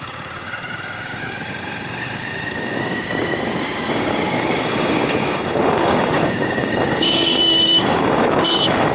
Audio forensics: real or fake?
fake